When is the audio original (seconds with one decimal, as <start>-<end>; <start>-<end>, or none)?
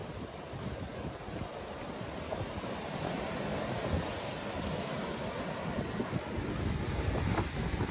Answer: 0.5-7.9